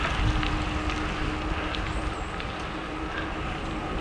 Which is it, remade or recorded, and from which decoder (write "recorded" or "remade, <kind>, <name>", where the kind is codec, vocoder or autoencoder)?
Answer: recorded